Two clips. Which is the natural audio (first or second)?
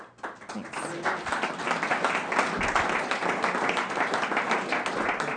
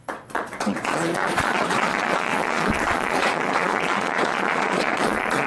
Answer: first